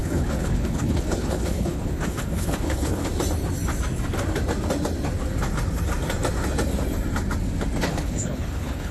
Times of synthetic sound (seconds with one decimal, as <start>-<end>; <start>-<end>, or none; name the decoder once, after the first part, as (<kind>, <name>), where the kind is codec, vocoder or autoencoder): 0.0-3.1 (codec, HILCodec); 7.9-8.9